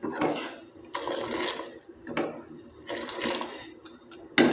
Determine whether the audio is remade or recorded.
recorded